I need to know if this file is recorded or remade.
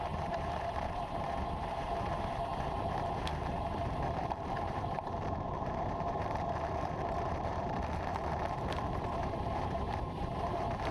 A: remade